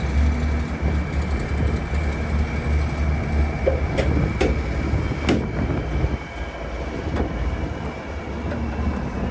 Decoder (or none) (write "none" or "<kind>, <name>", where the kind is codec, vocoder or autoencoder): none